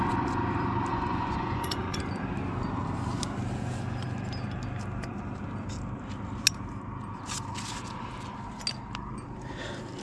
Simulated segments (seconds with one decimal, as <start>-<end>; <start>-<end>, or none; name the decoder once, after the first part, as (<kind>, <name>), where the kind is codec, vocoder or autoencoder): 0.9-2.0 (vocoder, Vocos)